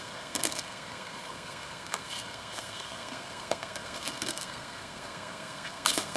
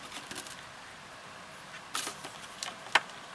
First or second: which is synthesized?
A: first